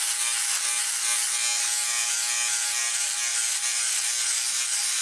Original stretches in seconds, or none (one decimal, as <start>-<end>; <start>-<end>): 0.0-5.0

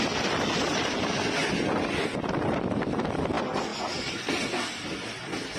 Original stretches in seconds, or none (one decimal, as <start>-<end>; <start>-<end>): 0.0-5.6

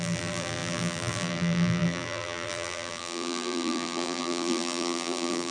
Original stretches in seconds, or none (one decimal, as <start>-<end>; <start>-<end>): none

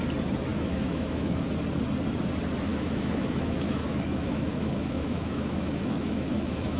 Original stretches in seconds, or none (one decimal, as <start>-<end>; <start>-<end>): 0.0-0.5; 1.5-2.7